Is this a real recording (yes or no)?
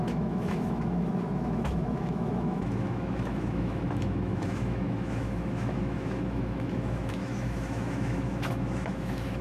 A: no